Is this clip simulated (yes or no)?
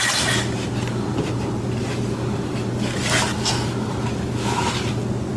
no